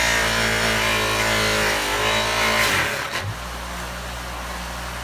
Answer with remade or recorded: recorded